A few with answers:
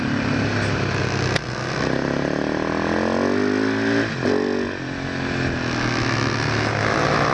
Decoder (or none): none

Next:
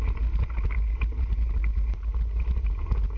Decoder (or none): none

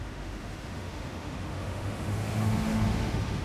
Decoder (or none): autoencoder, DAC-VAE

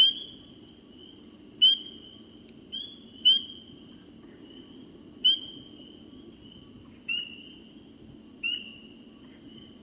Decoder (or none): none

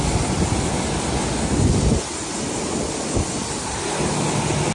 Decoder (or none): none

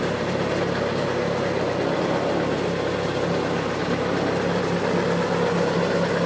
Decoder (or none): none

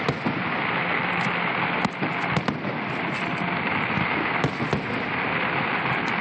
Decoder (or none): none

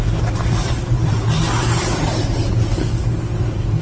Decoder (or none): none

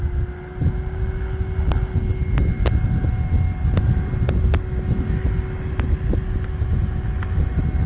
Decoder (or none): none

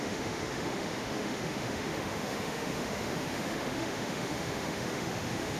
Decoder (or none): autoencoder, DAC-VAE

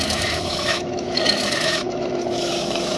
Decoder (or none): autoencoder, DAC-VAE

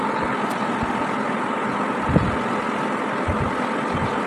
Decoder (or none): none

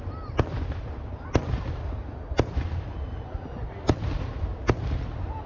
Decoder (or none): none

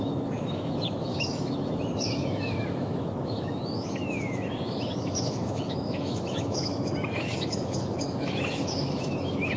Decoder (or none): autoencoder, DAC-VAE